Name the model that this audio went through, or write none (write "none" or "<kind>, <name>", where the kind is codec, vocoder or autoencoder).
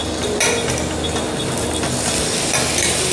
none